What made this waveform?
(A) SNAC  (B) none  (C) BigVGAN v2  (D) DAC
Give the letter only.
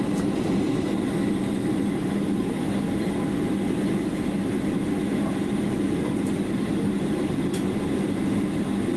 B